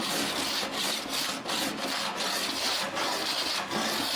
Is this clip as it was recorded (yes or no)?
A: yes